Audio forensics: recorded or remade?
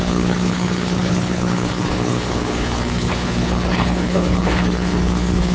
remade